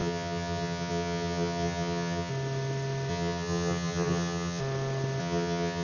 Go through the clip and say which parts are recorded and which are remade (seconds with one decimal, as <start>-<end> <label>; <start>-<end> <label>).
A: 0.0-2.3 remade; 2.3-3.1 recorded; 3.1-4.6 remade; 4.6-5.2 recorded; 5.2-5.8 remade